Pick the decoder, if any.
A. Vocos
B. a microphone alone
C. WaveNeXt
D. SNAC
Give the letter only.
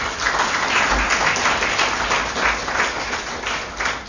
B